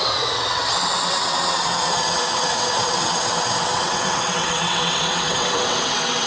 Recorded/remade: remade